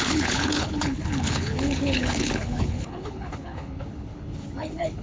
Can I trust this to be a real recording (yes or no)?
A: no